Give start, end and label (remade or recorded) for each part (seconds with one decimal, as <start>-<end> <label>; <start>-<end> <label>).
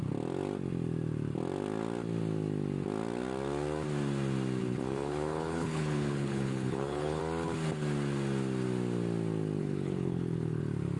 0.0-4.6 recorded; 4.6-7.2 remade; 7.2-9.6 recorded; 9.6-10.6 remade; 10.6-11.0 recorded